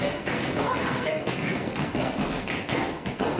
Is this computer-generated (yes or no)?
yes